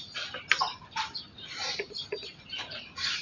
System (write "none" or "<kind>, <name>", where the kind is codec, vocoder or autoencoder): vocoder, BigVGAN v2